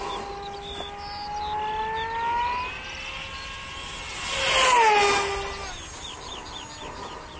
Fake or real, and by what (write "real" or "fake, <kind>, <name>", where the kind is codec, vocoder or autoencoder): real